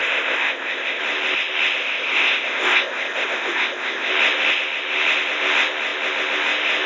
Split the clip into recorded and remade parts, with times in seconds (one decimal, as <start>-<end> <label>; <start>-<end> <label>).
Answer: 0.0-1.0 remade; 1.0-1.8 recorded; 1.8-4.1 remade; 4.1-6.9 recorded